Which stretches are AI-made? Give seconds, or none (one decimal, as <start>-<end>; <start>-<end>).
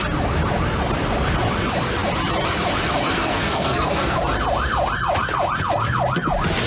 3.1-4.2